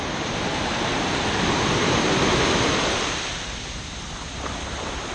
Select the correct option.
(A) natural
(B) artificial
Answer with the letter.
B